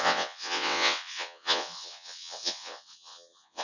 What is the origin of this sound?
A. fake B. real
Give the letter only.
A